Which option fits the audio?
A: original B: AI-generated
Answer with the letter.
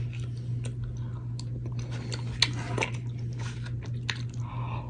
A